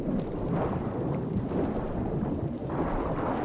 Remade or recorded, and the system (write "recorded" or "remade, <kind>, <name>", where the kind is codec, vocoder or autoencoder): recorded